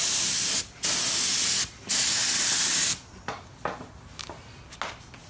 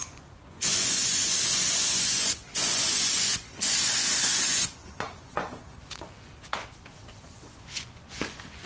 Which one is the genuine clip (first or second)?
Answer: first